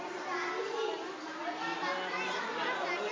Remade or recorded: recorded